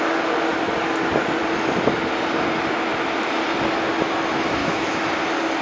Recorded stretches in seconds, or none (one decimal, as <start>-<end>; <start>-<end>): 0.0-4.6; 5.1-5.6